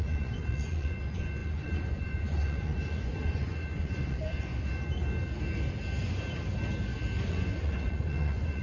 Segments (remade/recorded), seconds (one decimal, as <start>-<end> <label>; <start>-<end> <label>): 0.0-4.5 remade; 4.5-7.3 recorded; 7.3-8.6 remade